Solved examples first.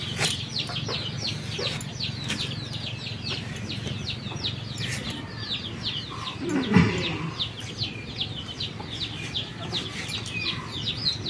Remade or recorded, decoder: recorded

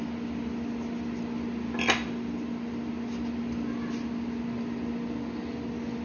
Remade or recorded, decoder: recorded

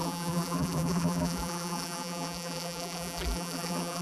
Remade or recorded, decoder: remade, vocoder, BigVGAN v2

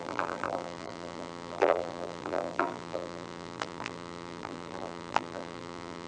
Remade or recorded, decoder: remade, vocoder, BigVGAN v2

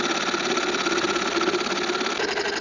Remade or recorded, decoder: recorded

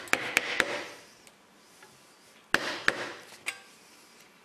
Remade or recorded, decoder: recorded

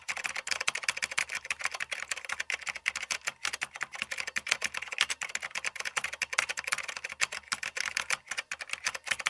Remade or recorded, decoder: recorded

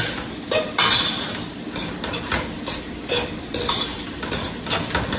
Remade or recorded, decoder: remade, vocoder, BigVGAN v2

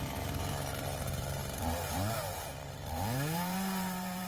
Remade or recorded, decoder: remade, vocoder, BigVGAN v2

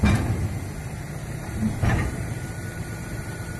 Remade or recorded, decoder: remade, vocoder, BigVGAN v2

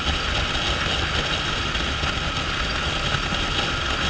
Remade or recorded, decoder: recorded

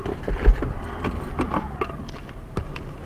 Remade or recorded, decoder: remade, vocoder, BigVGAN v2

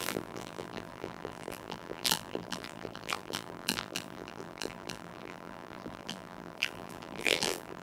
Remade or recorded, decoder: remade, vocoder, BigVGAN v2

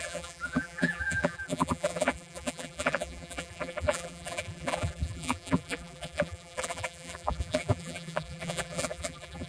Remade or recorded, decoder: remade, vocoder, BigVGAN v2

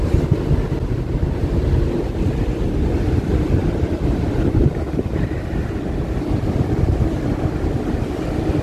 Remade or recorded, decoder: recorded